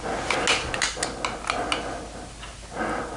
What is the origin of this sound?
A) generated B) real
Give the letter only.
B